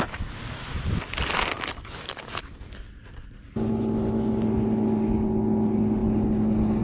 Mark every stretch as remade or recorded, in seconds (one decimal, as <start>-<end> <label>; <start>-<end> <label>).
0.0-6.8 recorded